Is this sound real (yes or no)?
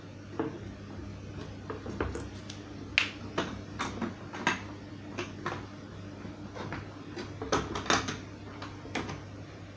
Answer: yes